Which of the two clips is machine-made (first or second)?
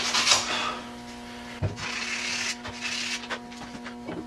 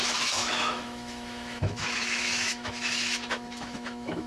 second